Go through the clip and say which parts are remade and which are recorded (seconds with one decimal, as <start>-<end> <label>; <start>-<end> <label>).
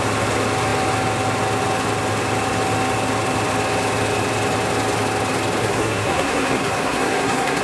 0.0-5.6 recorded; 5.6-7.6 remade